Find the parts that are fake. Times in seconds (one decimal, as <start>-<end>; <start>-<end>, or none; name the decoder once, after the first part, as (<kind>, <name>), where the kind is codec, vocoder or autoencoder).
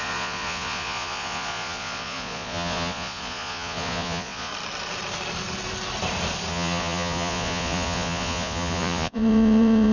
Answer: 0.0-4.5 (vocoder, Vocos); 6.5-9.9